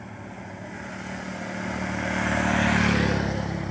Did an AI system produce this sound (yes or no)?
no